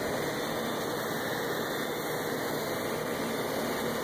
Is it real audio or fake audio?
real